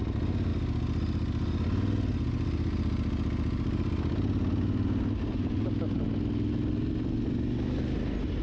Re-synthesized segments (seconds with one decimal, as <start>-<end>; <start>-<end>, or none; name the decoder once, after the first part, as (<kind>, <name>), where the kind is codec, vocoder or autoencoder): none